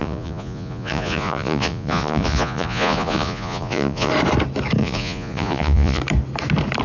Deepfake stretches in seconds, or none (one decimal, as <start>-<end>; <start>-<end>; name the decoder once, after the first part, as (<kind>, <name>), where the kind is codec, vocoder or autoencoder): 0.0-4.1 (vocoder, Vocos); 4.8-6.0